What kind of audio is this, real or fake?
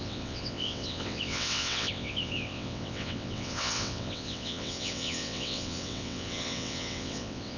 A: fake